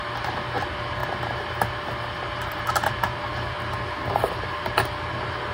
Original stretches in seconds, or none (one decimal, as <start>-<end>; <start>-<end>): 0.0-5.5

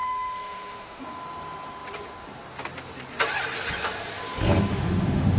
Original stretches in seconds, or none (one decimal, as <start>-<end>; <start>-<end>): 1.0-4.7

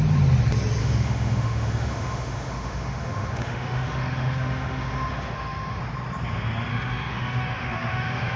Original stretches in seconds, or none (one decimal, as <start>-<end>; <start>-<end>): 0.0-0.8; 5.8-6.7

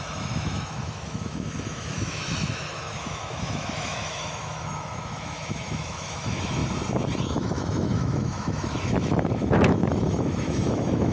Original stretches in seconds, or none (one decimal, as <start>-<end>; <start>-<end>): 6.6-7.2

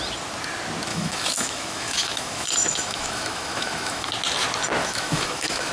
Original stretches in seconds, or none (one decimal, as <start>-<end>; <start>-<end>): 0.0-0.9; 4.1-4.8

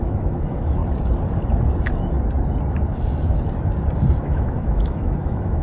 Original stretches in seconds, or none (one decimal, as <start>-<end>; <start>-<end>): 0.8-4.2